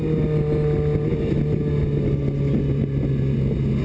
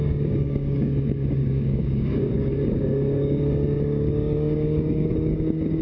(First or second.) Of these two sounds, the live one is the first